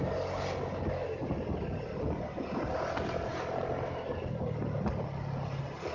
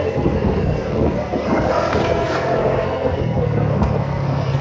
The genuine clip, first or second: first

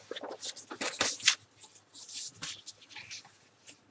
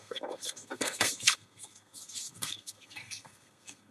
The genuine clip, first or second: first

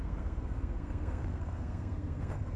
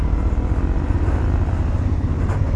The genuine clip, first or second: second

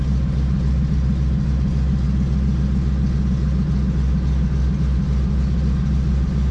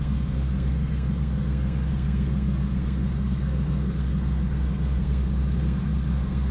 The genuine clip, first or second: first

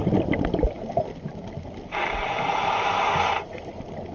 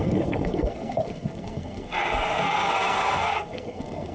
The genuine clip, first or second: first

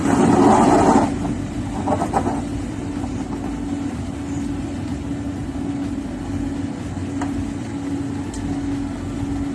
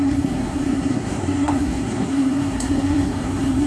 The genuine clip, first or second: first